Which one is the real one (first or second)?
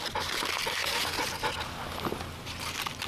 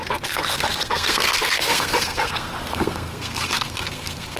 first